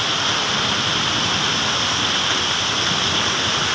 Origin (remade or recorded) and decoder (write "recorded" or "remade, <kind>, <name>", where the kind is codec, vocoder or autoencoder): recorded